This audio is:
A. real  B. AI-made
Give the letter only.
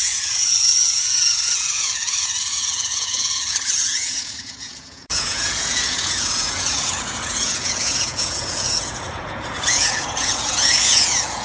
B